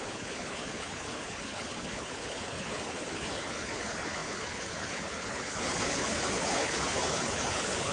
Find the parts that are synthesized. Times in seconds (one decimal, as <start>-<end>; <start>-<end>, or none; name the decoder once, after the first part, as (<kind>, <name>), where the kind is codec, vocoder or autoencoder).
0.0-7.9 (codec, HILCodec)